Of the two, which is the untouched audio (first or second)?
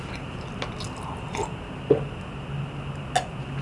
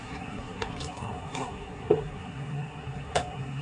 first